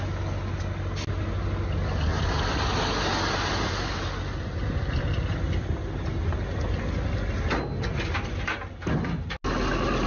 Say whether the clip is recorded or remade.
recorded